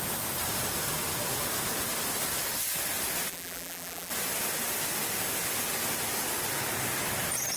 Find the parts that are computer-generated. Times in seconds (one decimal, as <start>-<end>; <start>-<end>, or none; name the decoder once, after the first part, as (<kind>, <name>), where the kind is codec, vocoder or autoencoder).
3.3-4.1 (vocoder, BigVGAN v2)